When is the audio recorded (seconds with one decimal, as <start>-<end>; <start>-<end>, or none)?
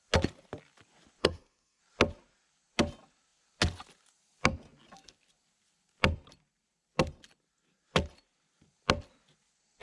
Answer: 0.0-1.2; 1.8-9.8